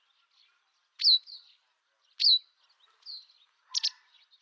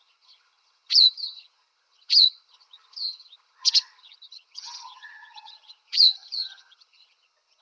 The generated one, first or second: second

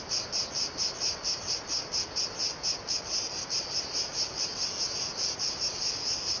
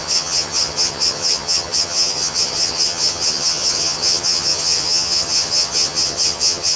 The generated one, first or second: second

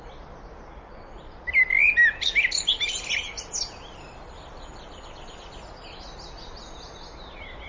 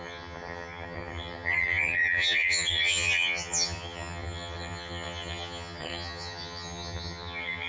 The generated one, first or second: second